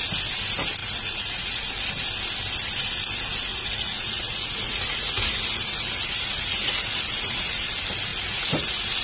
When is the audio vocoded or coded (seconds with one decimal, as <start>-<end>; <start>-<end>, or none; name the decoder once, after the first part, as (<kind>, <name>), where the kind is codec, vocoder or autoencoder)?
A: 0.8-1.7 (vocoder, Vocos); 3.5-7.7; 8.1-9.0